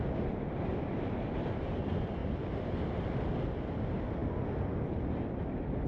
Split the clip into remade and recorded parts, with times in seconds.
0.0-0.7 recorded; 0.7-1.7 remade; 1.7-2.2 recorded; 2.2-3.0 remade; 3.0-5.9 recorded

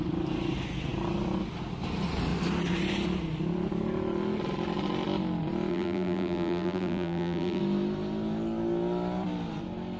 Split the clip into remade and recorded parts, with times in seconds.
0.0-5.7 recorded; 5.7-7.6 remade; 7.6-10.0 recorded

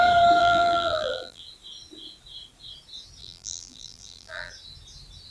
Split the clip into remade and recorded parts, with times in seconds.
0.0-0.4 recorded; 0.4-1.4 remade; 1.4-3.2 recorded; 3.2-4.5 remade; 4.5-5.3 recorded

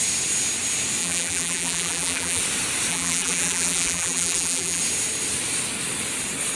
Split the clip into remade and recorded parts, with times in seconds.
0.0-1.0 recorded; 1.0-2.4 remade; 2.4-2.9 recorded; 2.9-4.8 remade; 4.8-6.5 recorded

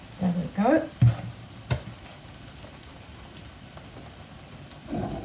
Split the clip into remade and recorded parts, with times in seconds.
0.0-5.2 recorded

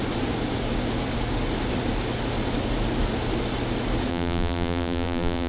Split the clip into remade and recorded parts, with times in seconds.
0.0-4.1 recorded; 4.1-5.5 remade

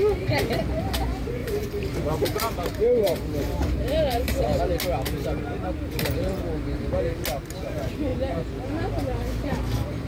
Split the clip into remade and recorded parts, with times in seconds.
0.0-1.4 recorded; 1.4-4.6 remade; 4.6-10.1 recorded